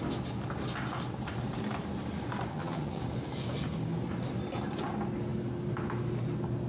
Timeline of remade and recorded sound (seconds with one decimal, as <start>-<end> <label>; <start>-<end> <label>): 0.0-2.5 recorded; 2.5-3.0 remade; 3.0-6.7 recorded